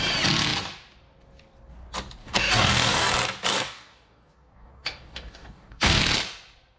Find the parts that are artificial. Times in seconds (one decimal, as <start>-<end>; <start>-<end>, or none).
2.2-3.1; 3.5-6.0